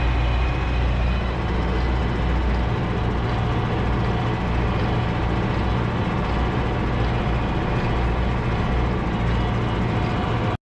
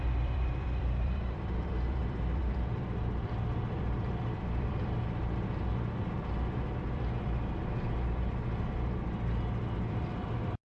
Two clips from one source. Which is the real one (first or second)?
first